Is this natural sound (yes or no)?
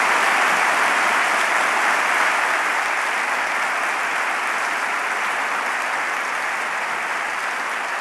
yes